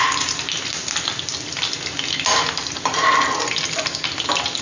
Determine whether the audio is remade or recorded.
recorded